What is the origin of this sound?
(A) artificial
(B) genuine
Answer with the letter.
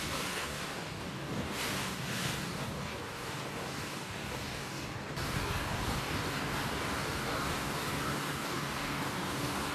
A